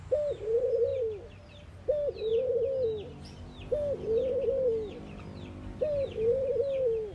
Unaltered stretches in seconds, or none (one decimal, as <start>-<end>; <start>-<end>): 0.0-7.1